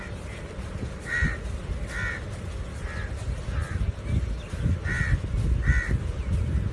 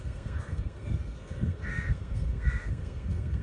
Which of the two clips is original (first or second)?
first